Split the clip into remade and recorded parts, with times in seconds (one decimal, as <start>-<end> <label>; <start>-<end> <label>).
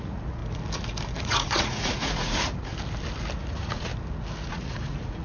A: 0.0-0.4 remade; 0.4-1.2 recorded; 1.2-2.7 remade; 2.7-3.5 recorded; 3.5-3.9 remade; 3.9-4.5 recorded; 4.5-5.2 remade